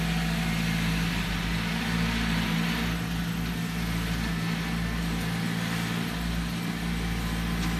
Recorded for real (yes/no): yes